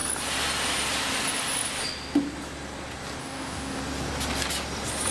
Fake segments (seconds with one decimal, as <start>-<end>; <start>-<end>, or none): 3.2-3.8